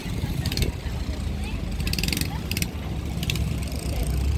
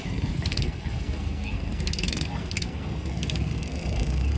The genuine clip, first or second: first